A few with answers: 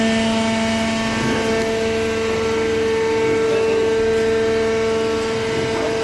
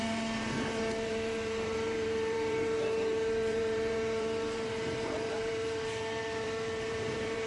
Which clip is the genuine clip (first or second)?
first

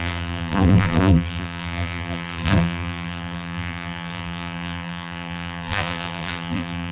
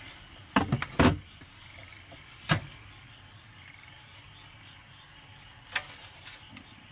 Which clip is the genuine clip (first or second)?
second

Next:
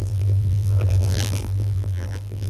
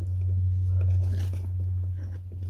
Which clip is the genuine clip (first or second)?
second